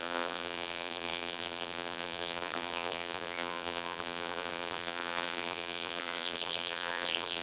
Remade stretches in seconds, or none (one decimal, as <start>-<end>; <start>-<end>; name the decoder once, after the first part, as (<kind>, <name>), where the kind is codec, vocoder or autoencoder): 0.0-7.4 (vocoder, BigVGAN v2)